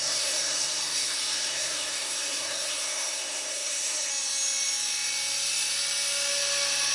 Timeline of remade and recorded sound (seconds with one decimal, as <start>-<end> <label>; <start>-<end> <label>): 0.0-4.1 remade; 4.1-6.9 recorded